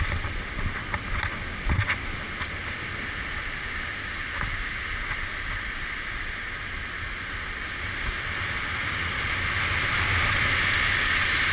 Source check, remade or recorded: recorded